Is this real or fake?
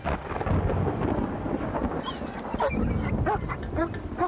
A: real